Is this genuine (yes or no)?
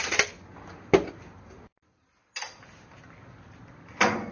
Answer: yes